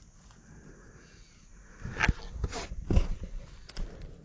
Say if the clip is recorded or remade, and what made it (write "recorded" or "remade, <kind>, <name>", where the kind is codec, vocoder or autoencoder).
recorded